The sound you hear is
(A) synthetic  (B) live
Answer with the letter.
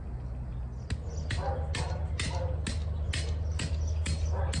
B